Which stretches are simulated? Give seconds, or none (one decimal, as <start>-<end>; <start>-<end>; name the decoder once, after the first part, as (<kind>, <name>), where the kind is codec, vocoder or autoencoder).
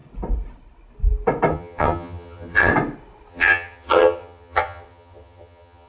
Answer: 1.5-2.7 (vocoder, HiFi-GAN); 3.3-5.9